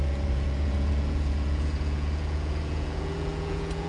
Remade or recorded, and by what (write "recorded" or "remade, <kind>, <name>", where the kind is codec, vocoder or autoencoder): remade, vocoder, Vocos